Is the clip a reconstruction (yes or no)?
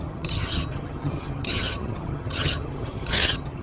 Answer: yes